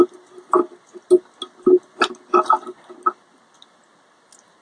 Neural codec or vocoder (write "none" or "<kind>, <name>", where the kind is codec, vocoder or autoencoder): none